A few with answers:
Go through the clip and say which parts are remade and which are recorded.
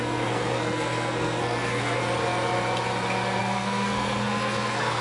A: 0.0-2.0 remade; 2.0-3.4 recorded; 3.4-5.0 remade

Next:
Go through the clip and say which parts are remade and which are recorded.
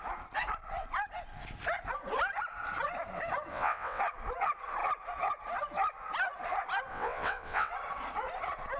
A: 0.0-3.5 recorded; 3.5-4.0 remade; 4.0-6.9 recorded; 6.9-7.7 remade; 7.7-8.8 recorded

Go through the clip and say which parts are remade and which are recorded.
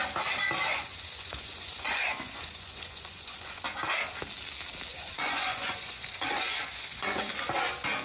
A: 0.0-0.7 recorded; 0.7-3.6 remade; 3.6-4.9 recorded; 4.9-7.3 remade; 7.3-8.0 recorded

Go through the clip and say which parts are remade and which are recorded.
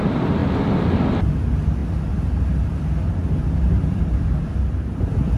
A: 0.0-5.4 recorded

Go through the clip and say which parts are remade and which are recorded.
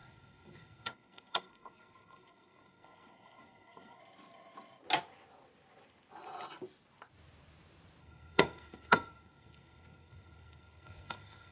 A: 0.0-4.0 remade; 4.0-8.0 recorded; 8.0-11.5 remade